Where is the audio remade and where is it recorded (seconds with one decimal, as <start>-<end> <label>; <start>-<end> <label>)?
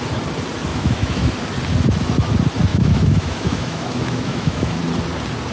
0.0-0.7 recorded; 0.7-1.3 remade; 1.3-2.7 recorded; 2.7-4.8 remade; 4.8-5.5 recorded